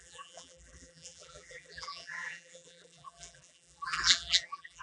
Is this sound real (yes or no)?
no